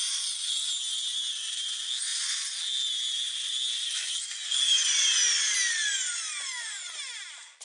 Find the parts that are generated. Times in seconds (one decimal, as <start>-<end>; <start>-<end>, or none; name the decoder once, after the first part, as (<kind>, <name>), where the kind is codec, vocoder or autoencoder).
none